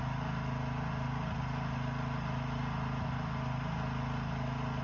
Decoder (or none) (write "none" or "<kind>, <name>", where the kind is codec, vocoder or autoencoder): none